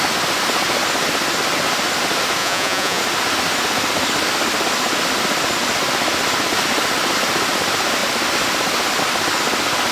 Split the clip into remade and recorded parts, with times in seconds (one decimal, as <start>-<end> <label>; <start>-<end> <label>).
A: 0.0-2.4 recorded; 2.4-3.0 remade; 3.0-9.9 recorded